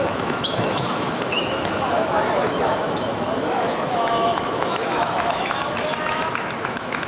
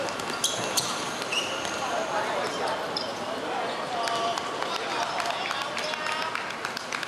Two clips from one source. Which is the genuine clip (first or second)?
second